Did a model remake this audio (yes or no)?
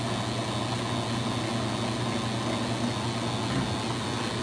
no